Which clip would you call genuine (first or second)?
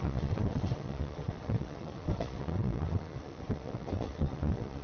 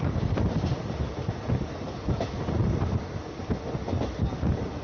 second